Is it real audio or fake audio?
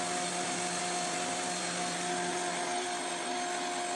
real